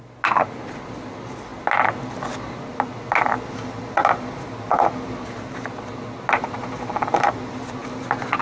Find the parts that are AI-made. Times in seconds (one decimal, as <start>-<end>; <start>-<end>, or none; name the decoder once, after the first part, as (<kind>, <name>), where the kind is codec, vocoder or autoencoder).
none